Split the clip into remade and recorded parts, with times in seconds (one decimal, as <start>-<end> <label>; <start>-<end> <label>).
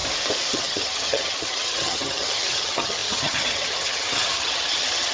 0.0-0.5 recorded; 0.5-5.1 remade